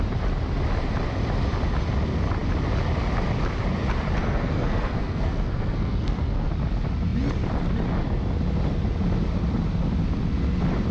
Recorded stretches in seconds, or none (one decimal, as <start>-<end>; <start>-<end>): 0.0-4.2; 6.5-10.9